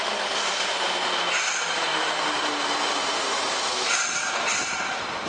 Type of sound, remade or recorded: recorded